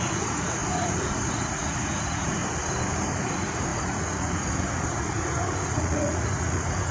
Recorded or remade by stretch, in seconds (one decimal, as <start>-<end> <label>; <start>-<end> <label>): 0.0-2.4 remade; 2.4-3.0 recorded; 3.0-6.9 remade